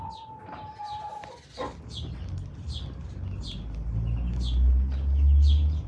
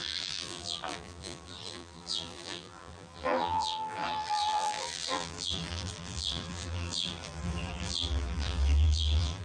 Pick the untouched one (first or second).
first